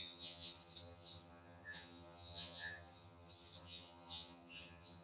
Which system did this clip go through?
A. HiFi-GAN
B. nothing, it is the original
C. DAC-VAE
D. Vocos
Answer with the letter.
A